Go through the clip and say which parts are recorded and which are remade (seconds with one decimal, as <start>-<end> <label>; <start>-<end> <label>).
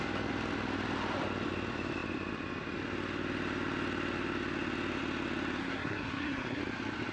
0.0-5.6 recorded; 5.6-6.6 remade; 6.6-7.1 recorded